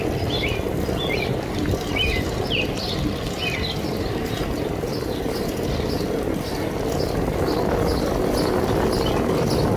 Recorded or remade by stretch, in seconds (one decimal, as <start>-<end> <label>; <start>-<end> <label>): 0.0-3.9 recorded; 3.9-5.7 remade; 5.7-9.8 recorded